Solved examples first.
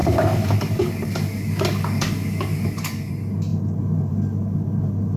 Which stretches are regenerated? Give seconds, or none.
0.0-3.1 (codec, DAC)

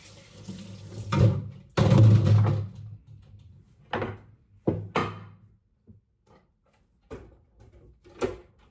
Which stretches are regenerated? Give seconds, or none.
none

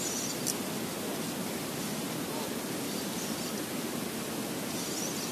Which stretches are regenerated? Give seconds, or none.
none

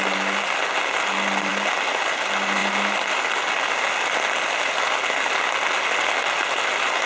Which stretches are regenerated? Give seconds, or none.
none

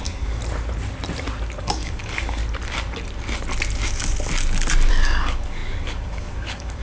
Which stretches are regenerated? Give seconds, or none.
0.0-0.4 (codec, DAC); 1.6-2.4; 4.9-6.8

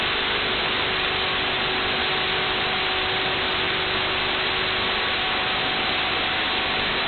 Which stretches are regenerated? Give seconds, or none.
none